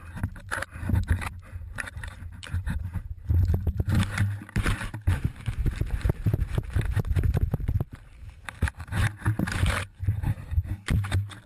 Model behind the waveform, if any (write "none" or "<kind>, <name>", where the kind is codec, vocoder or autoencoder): vocoder, BigVGAN v2